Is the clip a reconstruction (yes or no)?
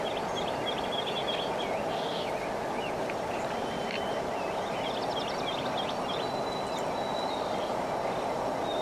no